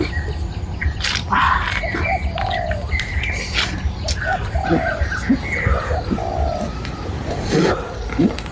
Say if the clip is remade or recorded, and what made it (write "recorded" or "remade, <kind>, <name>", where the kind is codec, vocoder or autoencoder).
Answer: recorded